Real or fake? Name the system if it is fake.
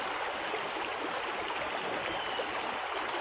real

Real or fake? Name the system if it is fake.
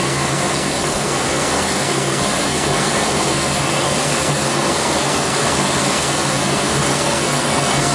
fake, codec, SNAC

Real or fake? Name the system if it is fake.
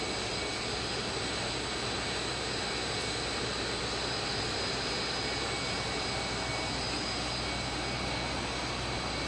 real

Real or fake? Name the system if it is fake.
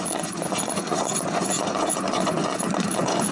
fake, vocoder, Vocos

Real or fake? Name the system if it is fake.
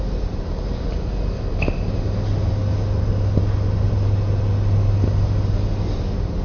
real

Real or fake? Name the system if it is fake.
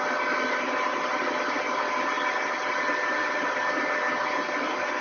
real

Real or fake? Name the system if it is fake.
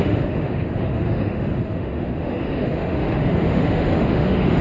fake, autoencoder, DAC-VAE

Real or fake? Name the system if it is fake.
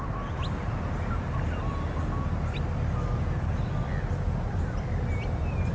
real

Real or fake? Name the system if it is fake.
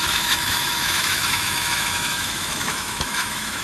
fake, autoencoder, DAC-VAE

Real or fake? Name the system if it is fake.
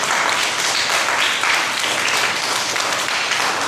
fake, vocoder, BigVGAN v2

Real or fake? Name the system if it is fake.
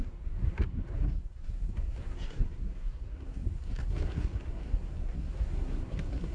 fake, codec, SNAC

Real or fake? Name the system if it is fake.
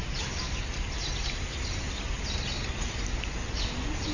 real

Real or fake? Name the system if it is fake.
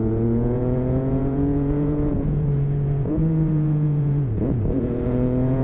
fake, vocoder, Vocos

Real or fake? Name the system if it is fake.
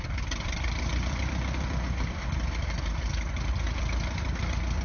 fake, vocoder, BigVGAN v2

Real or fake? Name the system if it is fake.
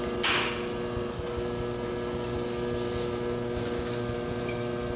real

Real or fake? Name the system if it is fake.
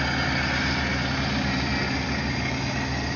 real